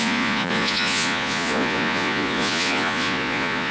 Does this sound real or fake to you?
fake